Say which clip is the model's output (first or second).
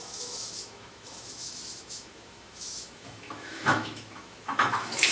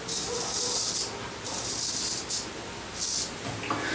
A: first